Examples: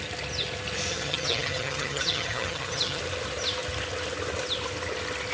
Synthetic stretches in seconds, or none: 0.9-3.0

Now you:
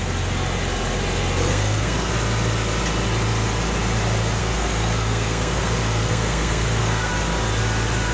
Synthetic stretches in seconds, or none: 1.4-2.1; 4.4-7.1